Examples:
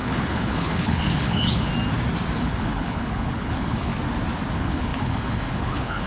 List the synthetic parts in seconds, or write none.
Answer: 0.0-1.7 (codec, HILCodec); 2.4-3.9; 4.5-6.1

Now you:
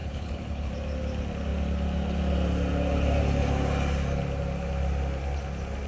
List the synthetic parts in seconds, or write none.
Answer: 0.0-0.7 (codec, HILCodec)

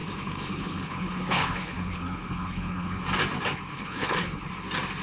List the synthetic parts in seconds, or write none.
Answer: 0.0-3.0 (codec, HILCodec); 3.7-4.5

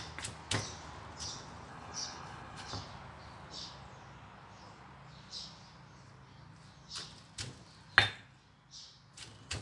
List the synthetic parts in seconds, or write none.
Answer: 1.7-2.7 (codec, HILCodec)

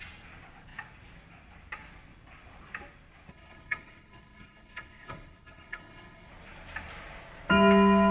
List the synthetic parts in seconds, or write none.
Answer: 3.3-6.3 (codec, HILCodec)

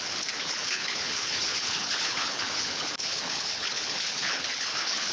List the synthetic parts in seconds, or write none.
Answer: 0.0-5.1 (codec, HILCodec)

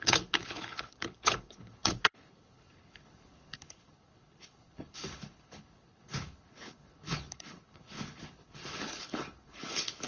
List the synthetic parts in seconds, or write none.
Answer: 0.0-10.1 (codec, HILCodec)

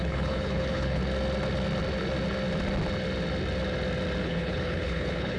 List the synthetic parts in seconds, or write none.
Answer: 0.0-1.0 (codec, HILCodec); 4.2-5.4